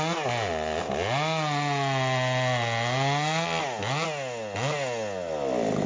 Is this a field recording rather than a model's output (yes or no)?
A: yes